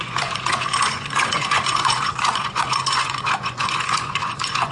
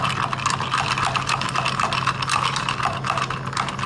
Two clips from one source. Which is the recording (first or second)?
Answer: second